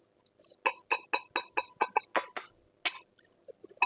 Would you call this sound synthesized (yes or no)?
no